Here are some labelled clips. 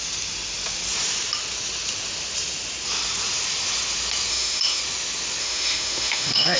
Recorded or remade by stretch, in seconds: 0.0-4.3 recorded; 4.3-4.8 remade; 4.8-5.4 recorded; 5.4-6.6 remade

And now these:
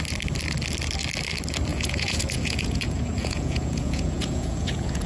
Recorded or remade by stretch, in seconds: 0.0-1.7 recorded; 1.7-5.1 remade

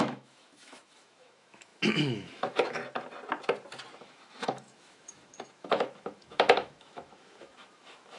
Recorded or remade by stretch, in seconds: 0.0-2.8 remade; 2.8-4.0 recorded; 4.0-8.2 remade

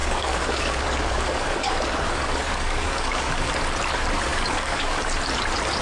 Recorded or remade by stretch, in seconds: 0.0-3.5 remade; 3.5-4.3 recorded; 4.3-5.0 remade; 5.0-5.8 recorded

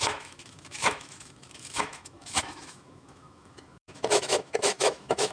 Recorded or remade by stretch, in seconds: 0.0-5.3 remade